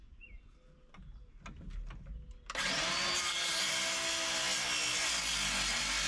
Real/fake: real